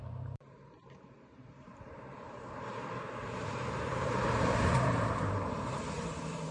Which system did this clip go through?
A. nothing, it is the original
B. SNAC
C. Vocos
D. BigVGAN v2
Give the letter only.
D